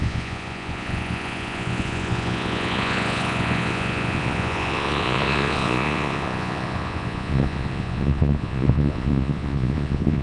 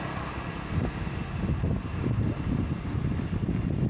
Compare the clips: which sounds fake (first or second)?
first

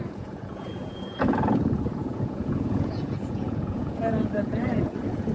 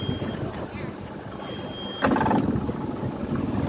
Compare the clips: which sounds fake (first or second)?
first